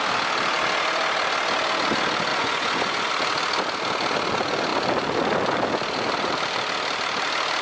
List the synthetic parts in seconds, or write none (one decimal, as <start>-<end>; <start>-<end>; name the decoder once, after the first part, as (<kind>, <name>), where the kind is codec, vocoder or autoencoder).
2.3-3.1 (vocoder, Vocos)